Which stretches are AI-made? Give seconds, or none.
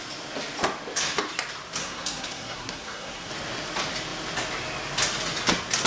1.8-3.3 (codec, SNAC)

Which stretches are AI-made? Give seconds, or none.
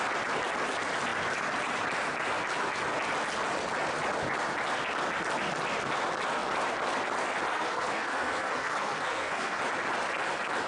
7.5-9.6 (codec, SNAC)